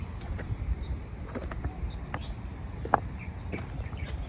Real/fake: real